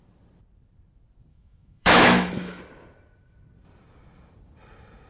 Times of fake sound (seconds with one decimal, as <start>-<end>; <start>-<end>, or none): 1.3-2.6